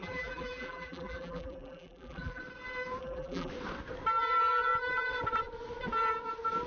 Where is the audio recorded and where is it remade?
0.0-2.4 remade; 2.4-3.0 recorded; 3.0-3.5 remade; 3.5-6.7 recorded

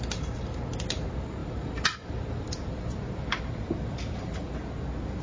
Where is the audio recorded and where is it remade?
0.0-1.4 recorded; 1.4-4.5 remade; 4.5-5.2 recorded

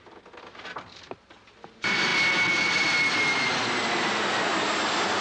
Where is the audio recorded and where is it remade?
0.0-5.2 recorded